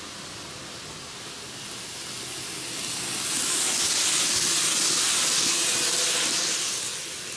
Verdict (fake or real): real